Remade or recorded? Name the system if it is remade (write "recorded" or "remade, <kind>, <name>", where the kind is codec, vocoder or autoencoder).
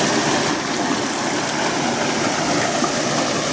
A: recorded